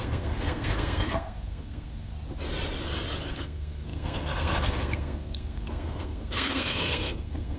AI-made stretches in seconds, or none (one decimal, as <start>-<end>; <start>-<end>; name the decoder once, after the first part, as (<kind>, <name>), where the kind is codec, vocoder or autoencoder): 0.0-2.1 (codec, SNAC); 3.3-7.6

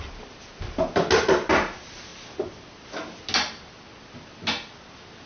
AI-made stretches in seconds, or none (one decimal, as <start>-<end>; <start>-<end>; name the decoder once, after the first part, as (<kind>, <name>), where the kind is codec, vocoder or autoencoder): none

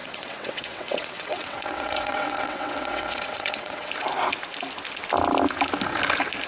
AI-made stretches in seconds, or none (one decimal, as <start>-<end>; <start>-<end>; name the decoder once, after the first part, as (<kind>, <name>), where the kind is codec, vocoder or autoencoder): 0.0-3.9 (vocoder, WaveNeXt)

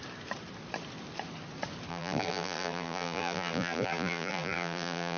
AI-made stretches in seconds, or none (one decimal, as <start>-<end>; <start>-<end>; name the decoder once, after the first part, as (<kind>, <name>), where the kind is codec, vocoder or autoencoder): 1.9-5.2 (vocoder, BigVGAN v2)

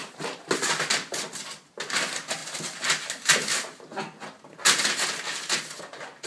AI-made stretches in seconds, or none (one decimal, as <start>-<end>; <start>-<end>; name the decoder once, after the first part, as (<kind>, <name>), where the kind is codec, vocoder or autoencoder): 0.0-1.8 (vocoder, BigVGAN v2)

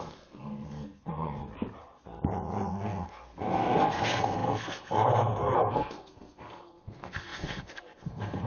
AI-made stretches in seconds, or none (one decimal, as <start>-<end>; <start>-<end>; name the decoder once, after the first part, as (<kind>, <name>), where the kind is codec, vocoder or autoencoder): 0.0-1.4 (codec, SNAC); 2.7-8.5